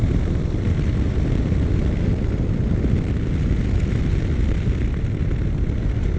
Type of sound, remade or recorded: recorded